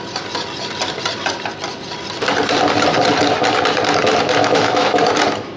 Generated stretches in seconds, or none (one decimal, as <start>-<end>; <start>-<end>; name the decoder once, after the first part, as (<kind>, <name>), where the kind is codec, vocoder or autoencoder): 4.4-5.0 (autoencoder, DAC-VAE)